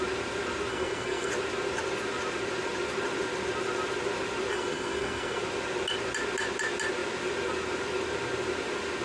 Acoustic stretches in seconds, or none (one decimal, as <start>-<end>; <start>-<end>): 0.0-0.7; 1.3-4.5; 5.4-9.0